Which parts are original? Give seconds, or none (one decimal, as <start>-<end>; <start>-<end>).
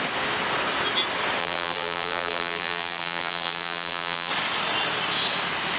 0.0-1.4; 4.3-5.8